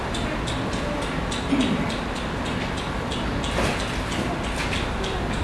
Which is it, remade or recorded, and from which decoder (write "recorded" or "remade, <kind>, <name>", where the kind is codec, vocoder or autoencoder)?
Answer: recorded